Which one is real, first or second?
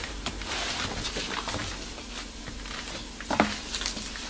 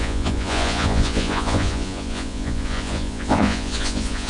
first